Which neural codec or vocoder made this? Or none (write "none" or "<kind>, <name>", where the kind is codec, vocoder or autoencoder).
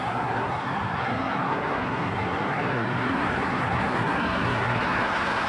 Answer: codec, SNAC